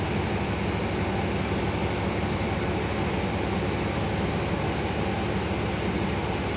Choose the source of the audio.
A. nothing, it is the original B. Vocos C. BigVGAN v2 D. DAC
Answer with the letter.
A